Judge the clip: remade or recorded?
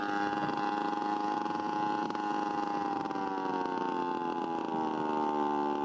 recorded